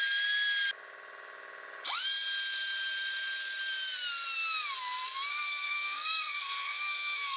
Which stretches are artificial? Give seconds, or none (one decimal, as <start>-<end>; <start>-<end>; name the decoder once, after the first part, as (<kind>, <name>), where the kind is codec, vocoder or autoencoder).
5.3-7.4 (codec, SNAC)